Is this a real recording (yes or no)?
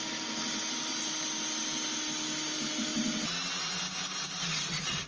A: yes